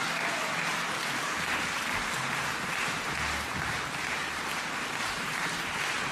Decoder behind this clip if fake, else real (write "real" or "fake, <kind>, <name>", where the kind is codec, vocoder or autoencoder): real